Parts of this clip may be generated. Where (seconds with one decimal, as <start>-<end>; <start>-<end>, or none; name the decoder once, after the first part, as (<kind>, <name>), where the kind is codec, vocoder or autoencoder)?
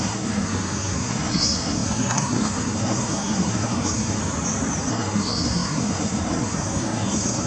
0.0-4.2 (codec, SNAC); 4.9-7.5